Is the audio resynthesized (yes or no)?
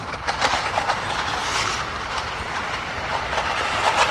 yes